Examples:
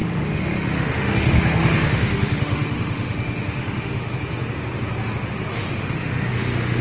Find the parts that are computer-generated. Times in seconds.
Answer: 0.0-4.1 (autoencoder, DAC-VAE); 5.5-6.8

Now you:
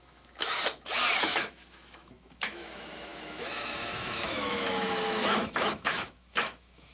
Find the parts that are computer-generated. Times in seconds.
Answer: 0.0-0.6 (autoencoder, DAC-VAE); 1.2-6.9

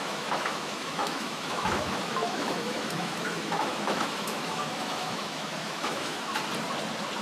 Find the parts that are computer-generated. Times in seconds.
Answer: 0.0-6.3 (autoencoder, DAC-VAE)

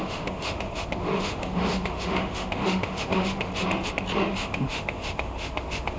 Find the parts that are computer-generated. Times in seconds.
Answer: 0.0-3.5 (autoencoder, DAC-VAE); 4.3-6.0

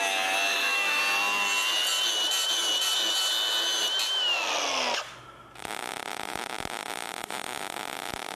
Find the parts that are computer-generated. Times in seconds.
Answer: 0.5-1.0 (autoencoder, DAC-VAE)

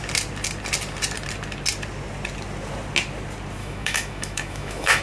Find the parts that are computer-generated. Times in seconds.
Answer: 3.6-5.0 (autoencoder, DAC-VAE)

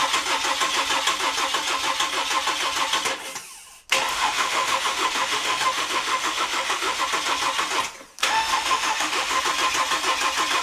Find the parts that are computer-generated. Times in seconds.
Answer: 4.1-7.0 (autoencoder, DAC-VAE); 8.2-9.4

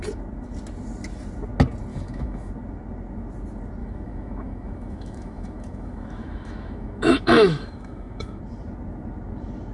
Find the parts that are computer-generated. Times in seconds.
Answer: 1.9-2.5 (autoencoder, DAC-VAE); 3.8-8.4